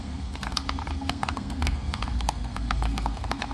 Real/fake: fake